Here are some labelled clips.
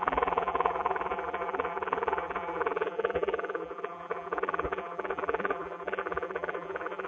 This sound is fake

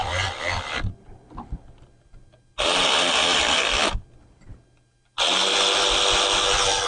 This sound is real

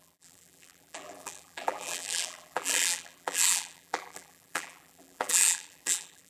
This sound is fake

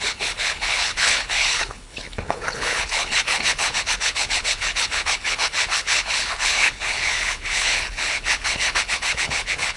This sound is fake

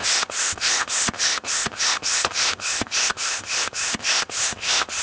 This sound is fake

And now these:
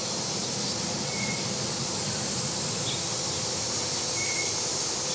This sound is real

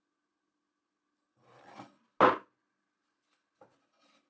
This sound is real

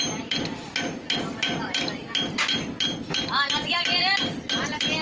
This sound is real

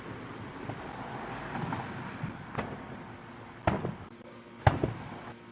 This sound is real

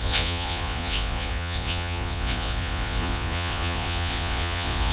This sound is fake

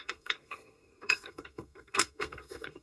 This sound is fake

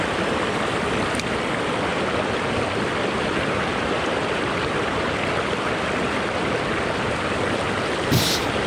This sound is real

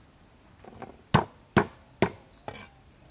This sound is real